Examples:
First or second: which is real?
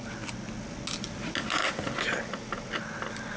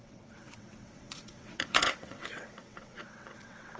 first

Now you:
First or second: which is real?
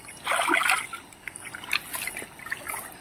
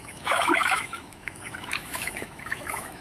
first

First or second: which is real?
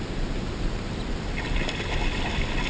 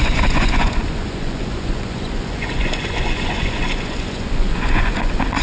first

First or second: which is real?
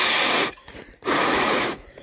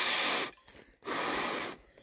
second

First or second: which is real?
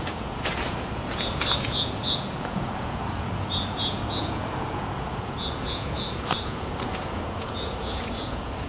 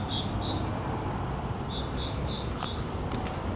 second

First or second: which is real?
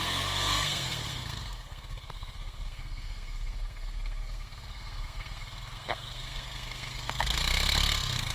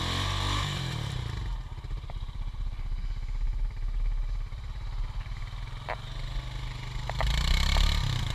second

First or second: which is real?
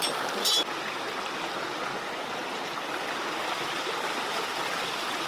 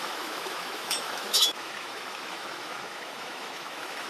first